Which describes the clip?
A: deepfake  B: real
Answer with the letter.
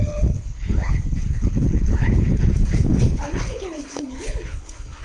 A